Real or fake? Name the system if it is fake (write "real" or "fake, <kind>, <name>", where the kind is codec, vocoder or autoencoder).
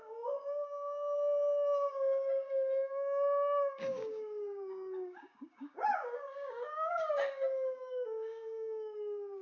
fake, codec, DAC